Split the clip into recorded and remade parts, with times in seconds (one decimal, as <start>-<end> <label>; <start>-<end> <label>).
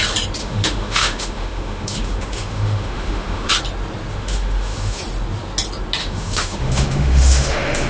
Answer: 0.0-0.4 recorded; 0.4-3.5 remade; 3.5-4.1 recorded; 4.1-5.0 remade; 5.0-6.0 recorded; 6.0-7.9 remade